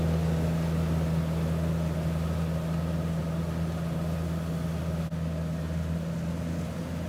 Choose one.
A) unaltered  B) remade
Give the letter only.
A